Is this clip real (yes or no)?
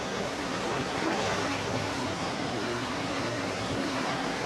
no